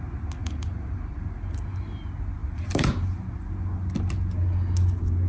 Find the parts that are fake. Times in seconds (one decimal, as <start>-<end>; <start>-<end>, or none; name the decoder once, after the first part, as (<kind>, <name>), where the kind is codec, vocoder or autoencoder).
0.4-1.4 (vocoder, BigVGAN v2); 2.4-3.1